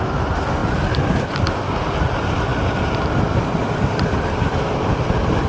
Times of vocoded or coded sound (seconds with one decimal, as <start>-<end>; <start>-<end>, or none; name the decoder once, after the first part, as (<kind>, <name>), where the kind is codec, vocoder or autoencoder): none

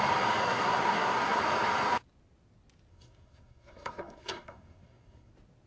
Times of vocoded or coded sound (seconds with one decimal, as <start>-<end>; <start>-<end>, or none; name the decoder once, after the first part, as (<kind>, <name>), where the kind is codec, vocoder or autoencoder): 0.4-1.4 (codec, SNAC); 2.9-5.3